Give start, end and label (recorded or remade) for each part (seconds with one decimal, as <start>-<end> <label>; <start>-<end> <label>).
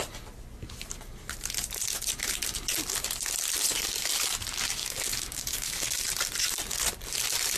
0.0-4.8 recorded; 4.8-6.0 remade; 6.0-7.6 recorded